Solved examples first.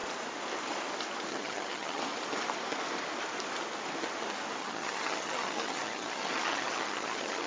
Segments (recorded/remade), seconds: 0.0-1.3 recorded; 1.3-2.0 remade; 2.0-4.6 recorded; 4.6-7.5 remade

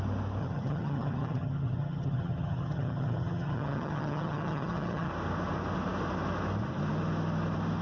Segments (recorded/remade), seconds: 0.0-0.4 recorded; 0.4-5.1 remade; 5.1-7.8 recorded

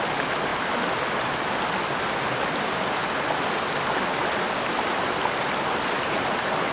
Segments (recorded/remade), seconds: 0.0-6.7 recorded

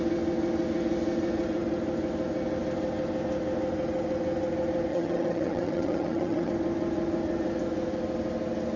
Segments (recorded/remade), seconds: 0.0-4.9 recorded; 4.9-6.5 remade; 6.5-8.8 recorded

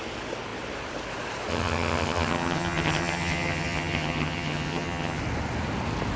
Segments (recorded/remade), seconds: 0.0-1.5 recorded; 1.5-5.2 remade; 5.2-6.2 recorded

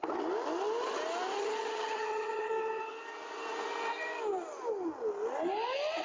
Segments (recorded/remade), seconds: 0.0-1.4 recorded; 1.4-2.5 remade; 2.5-6.0 recorded

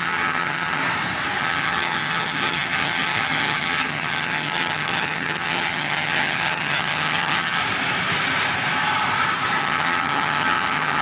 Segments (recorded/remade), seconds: 0.0-0.8 remade; 0.8-1.4 recorded; 1.4-7.6 remade; 7.6-9.6 recorded; 9.6-11.0 remade